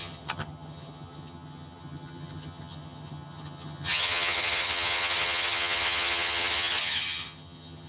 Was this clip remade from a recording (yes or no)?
yes